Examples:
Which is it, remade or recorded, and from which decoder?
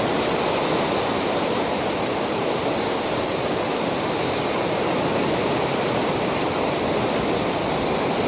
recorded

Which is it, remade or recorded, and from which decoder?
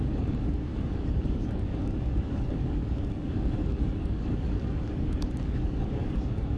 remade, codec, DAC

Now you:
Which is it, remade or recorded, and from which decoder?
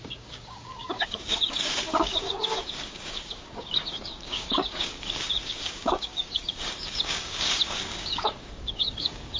remade, codec, DAC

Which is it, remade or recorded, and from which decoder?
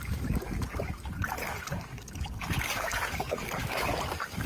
remade, codec, DAC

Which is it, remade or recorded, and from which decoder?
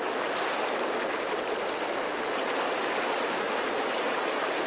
recorded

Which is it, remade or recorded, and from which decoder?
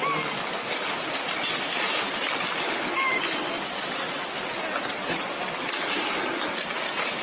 recorded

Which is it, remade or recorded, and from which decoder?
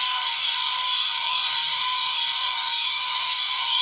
remade, codec, DAC